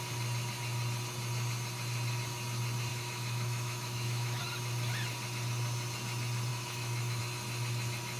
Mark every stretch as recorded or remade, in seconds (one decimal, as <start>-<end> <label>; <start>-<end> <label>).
0.0-2.9 recorded; 2.9-4.4 remade; 4.4-6.5 recorded; 6.5-7.2 remade; 7.2-8.2 recorded